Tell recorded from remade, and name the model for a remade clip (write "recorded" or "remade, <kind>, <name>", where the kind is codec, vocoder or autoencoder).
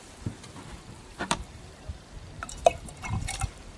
remade, vocoder, BigVGAN v2